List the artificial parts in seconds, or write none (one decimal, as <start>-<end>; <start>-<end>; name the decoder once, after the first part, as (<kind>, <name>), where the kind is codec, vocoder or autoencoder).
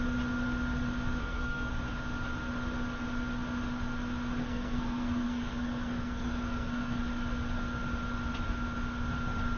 1.2-1.7 (codec, SNAC); 4.4-7.0